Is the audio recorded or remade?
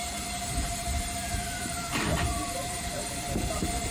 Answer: remade